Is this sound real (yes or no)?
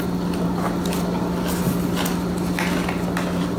yes